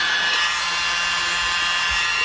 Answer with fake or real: real